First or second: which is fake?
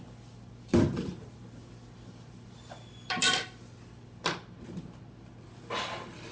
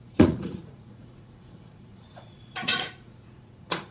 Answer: second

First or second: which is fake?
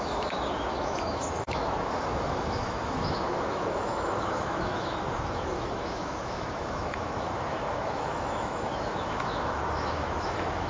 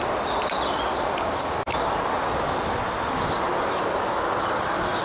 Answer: first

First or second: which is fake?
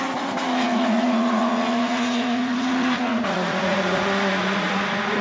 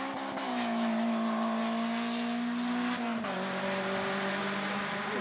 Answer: first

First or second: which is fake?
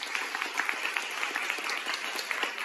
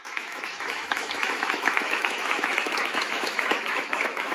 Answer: second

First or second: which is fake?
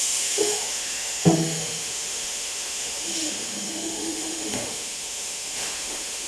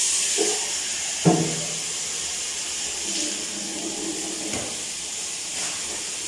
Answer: first